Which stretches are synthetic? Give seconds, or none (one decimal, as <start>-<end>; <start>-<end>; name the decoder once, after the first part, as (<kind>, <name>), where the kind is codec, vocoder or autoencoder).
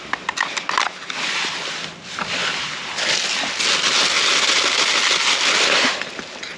none